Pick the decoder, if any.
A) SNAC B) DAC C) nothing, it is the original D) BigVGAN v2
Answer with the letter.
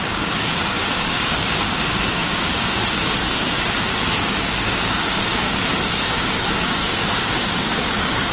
B